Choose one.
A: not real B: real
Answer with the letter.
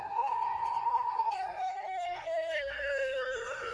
A